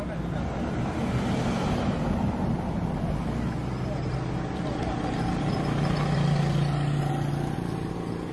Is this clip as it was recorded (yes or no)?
yes